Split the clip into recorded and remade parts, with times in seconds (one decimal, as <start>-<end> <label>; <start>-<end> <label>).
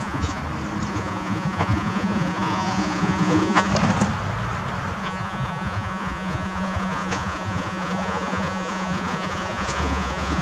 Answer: 0.0-0.4 remade; 0.4-0.9 recorded; 0.9-3.7 remade; 3.7-5.0 recorded; 5.0-10.4 remade